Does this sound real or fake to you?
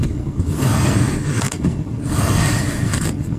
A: fake